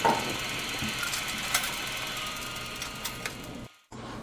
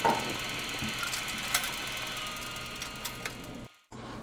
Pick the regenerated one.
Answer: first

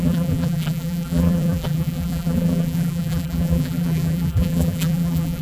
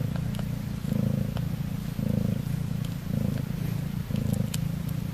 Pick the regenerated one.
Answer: first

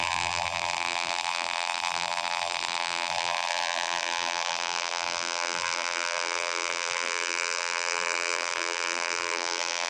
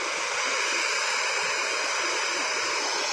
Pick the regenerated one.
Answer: first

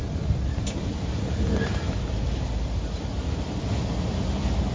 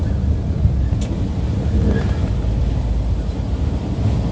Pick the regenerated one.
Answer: first